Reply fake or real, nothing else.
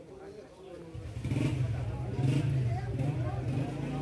real